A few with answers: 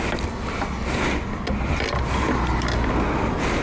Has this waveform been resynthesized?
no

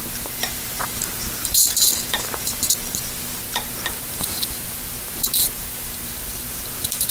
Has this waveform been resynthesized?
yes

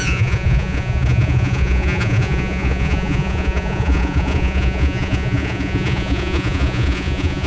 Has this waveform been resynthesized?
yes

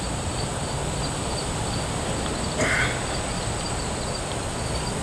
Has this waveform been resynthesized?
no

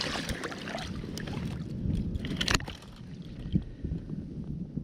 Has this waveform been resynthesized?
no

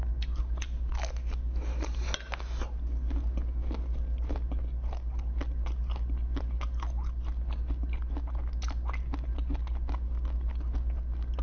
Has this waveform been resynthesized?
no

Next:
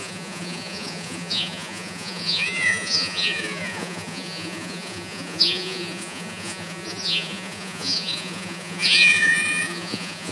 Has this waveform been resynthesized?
yes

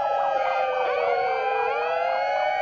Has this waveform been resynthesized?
yes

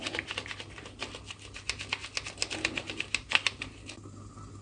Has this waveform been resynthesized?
no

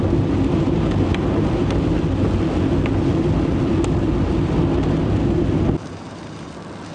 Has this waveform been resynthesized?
no